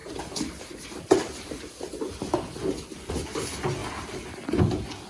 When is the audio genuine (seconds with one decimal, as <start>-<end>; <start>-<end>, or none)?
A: 0.0-5.1